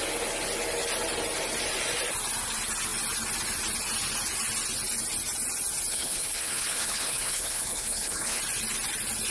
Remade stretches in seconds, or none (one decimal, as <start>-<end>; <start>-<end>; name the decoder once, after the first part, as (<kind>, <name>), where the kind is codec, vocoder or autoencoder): 5.9-8.4 (codec, HILCodec)